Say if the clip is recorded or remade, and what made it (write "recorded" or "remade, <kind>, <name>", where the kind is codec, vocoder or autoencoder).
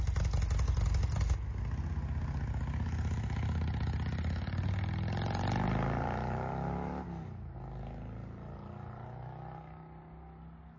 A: recorded